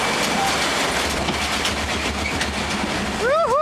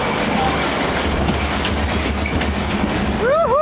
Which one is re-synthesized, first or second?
second